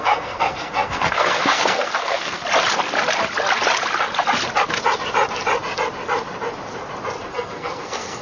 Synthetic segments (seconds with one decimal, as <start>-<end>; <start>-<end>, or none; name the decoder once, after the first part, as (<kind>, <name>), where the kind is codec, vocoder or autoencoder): 0.0-2.4 (codec, SNAC); 7.2-8.2